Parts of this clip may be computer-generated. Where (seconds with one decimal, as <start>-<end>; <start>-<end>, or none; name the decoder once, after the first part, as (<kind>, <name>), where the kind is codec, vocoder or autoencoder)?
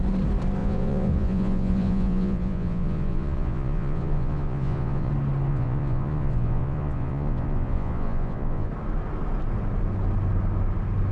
0.6-5.1 (vocoder, Vocos); 5.5-8.7